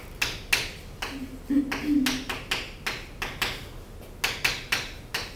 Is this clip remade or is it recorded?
recorded